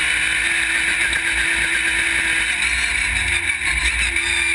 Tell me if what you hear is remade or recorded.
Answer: recorded